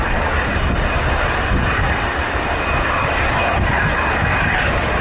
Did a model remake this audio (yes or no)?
no